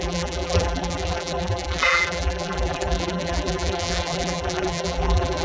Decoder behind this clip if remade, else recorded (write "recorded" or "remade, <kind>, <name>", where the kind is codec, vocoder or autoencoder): remade, vocoder, BigVGAN v2